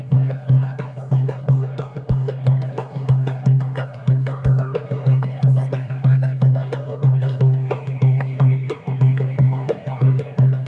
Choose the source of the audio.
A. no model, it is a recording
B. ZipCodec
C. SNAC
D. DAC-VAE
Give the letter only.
C